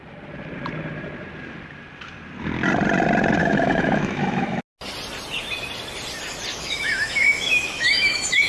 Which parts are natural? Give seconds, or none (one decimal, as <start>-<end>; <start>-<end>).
0.0-3.4; 4.6-6.5